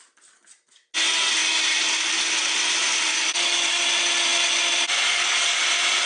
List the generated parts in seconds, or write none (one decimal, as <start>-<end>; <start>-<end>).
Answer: 3.1-3.8; 5.1-5.6